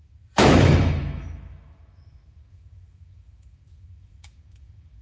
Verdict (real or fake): fake